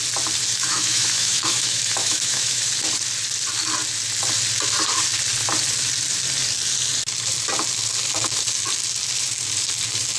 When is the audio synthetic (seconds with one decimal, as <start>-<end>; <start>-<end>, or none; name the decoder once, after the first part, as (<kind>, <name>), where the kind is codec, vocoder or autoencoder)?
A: 0.5-2.7 (autoencoder, DAC-VAE)